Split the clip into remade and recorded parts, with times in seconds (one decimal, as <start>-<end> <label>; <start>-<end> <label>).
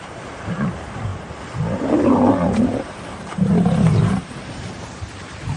0.0-1.1 remade; 1.1-1.8 recorded; 1.8-5.6 remade